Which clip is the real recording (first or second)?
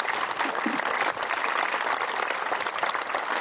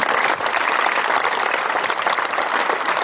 first